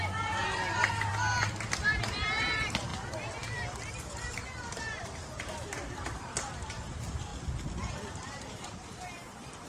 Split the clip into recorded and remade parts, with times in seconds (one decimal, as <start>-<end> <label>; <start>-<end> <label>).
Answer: 0.0-1.1 remade; 1.1-1.8 recorded; 1.8-2.9 remade; 2.9-3.9 recorded; 3.9-7.3 remade; 7.3-7.9 recorded; 7.9-9.7 remade